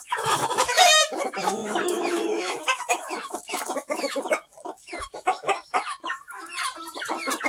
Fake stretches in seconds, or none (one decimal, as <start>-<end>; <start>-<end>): 0.0-6.5